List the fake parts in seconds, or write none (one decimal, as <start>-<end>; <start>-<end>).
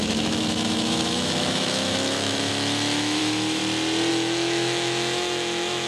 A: 0.0-3.6; 4.1-5.9